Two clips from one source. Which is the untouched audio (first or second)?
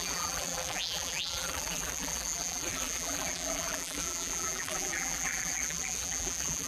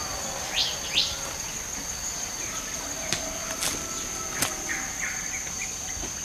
second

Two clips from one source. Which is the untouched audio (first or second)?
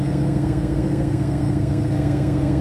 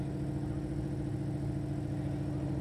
second